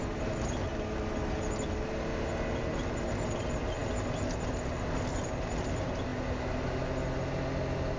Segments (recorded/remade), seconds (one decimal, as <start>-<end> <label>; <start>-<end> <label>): 0.0-8.0 recorded